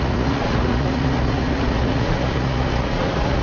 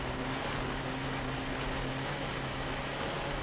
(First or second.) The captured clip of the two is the second